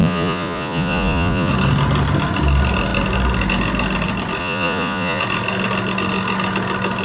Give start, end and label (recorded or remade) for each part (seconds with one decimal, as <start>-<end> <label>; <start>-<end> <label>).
0.0-1.5 remade; 1.5-4.4 recorded; 4.4-5.2 remade; 5.2-7.0 recorded